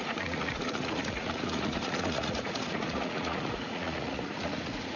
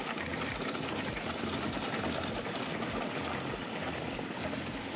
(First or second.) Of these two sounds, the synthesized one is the first